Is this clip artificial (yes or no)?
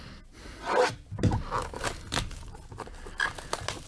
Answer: no